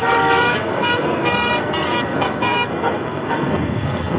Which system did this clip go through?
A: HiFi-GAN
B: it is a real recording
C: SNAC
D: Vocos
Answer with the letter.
C